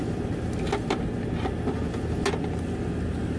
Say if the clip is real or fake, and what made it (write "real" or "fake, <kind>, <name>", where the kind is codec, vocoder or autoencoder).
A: real